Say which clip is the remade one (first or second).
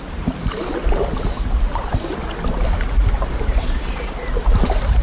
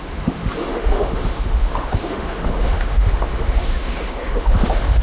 second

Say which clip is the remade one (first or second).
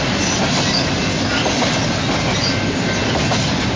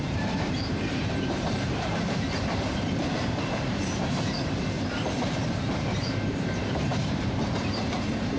second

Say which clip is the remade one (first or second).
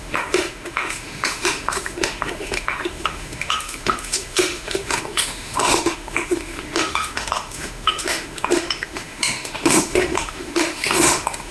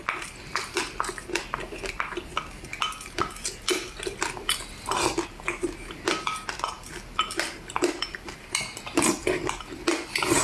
first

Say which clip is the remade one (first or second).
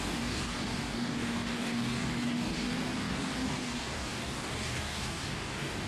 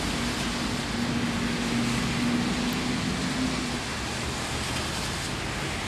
first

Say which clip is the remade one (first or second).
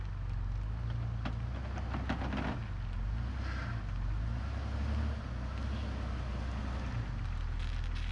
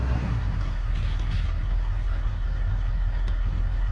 second